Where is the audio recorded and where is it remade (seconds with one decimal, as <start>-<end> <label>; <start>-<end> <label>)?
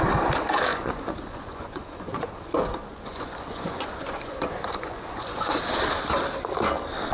0.0-0.7 recorded; 0.7-2.3 remade; 2.3-2.9 recorded; 2.9-5.6 remade; 5.6-7.1 recorded